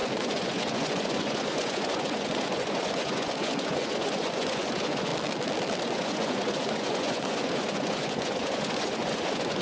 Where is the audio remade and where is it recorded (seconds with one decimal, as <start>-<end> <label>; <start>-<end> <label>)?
0.0-5.1 remade; 5.1-5.8 recorded; 5.8-9.6 remade